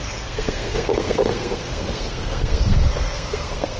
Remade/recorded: remade